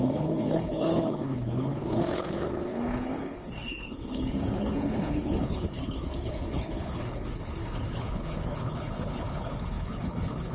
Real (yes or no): no